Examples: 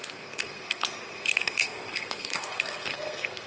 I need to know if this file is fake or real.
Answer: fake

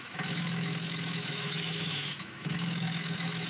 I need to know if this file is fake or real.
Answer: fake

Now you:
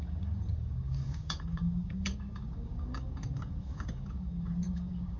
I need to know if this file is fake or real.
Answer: fake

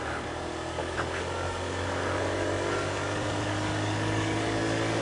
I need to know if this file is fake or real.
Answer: fake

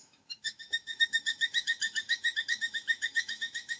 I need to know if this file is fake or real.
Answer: fake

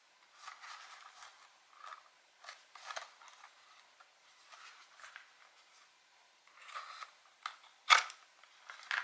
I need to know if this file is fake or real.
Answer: real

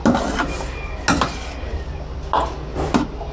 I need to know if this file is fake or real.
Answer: real